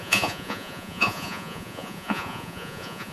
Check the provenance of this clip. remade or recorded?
remade